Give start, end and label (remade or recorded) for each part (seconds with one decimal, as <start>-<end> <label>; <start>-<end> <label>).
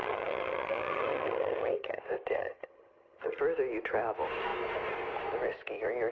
0.0-2.0 remade; 2.0-2.4 recorded; 2.4-3.4 remade; 3.4-6.1 recorded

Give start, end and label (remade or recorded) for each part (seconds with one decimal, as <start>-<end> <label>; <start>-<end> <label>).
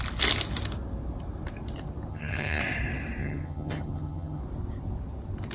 0.0-2.1 recorded; 2.1-2.6 remade; 2.6-3.2 recorded; 3.2-4.4 remade; 4.4-5.5 recorded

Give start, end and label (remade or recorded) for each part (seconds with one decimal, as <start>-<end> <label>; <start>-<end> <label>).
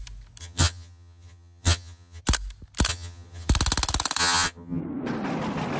0.0-0.4 recorded; 0.4-2.2 remade; 2.2-2.9 recorded; 2.9-3.5 remade; 3.5-4.2 recorded; 4.2-4.8 remade; 4.8-5.8 recorded